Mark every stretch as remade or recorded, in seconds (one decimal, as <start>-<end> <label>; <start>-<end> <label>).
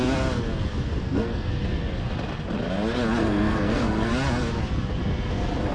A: 0.0-1.0 recorded; 1.0-1.5 remade; 1.5-3.2 recorded; 3.2-4.1 remade; 4.1-5.7 recorded